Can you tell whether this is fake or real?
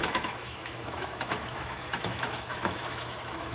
fake